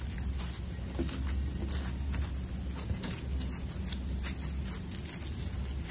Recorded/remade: recorded